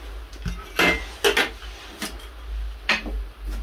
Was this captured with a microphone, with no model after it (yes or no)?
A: yes